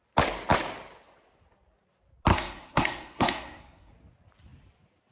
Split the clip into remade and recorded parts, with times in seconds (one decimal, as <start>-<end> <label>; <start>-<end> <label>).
0.0-2.3 recorded; 2.3-3.9 remade; 3.9-5.1 recorded